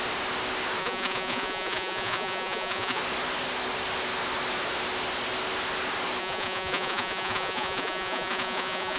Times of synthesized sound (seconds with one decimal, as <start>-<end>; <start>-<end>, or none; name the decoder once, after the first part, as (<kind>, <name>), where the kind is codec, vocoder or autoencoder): 0.8-3.0 (vocoder, Vocos); 6.2-9.0